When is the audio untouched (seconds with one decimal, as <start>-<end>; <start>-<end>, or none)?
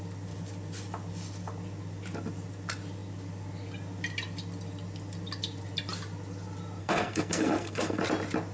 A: 0.0-6.8; 8.0-8.5